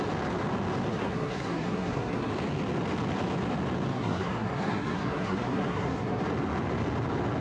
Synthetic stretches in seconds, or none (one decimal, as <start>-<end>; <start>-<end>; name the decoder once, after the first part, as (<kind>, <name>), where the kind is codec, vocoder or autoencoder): 0.9-2.3 (codec, SNAC); 3.9-6.2